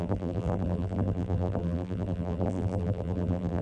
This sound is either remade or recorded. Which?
remade